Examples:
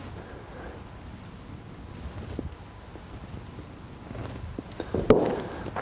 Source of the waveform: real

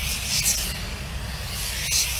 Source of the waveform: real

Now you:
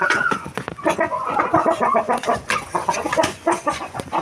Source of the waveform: fake